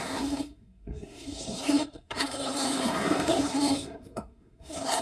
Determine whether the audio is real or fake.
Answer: fake